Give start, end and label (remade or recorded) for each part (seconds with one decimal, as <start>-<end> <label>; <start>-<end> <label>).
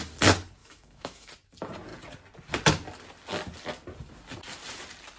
0.0-0.6 recorded; 0.6-1.3 remade; 1.3-5.2 recorded